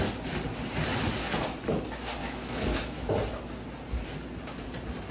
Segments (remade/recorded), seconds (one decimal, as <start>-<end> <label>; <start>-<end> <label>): 0.0-2.2 recorded; 2.2-3.1 remade; 3.1-5.1 recorded

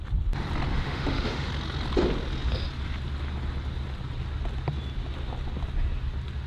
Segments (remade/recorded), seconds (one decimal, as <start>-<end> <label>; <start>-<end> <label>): 0.0-0.7 recorded; 0.7-1.5 remade; 1.5-6.5 recorded